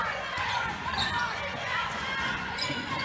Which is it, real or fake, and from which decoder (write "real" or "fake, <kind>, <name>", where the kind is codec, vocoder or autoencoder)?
fake, vocoder, Vocos